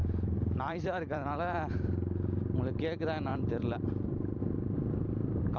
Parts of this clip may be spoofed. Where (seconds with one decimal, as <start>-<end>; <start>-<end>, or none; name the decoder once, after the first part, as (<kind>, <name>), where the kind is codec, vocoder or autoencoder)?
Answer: 0.0-1.7 (vocoder, BigVGAN v2); 3.3-4.4